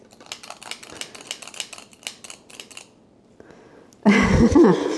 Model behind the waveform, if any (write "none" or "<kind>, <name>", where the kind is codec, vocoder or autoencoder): none